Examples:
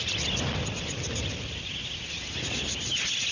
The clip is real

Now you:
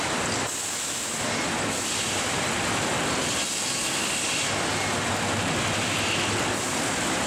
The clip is real